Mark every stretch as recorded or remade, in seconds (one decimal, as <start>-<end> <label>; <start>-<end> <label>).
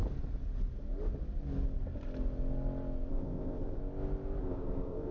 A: 0.0-3.1 recorded; 3.1-3.8 remade; 3.8-4.4 recorded; 4.4-5.1 remade